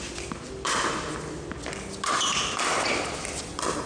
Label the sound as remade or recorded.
recorded